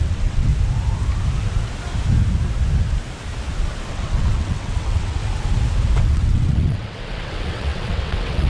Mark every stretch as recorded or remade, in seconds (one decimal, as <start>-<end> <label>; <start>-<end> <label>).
0.0-0.5 remade; 0.5-3.9 recorded; 3.9-5.2 remade; 5.2-6.0 recorded; 6.0-8.5 remade